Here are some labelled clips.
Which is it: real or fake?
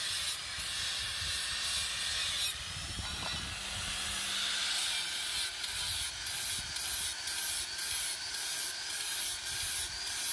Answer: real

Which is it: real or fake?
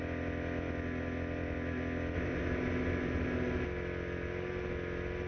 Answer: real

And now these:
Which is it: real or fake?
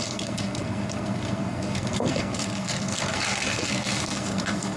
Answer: fake